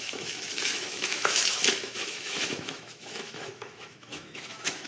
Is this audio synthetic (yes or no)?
yes